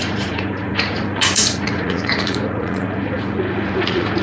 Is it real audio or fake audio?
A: fake